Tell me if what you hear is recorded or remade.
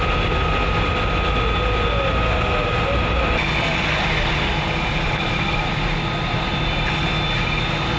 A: recorded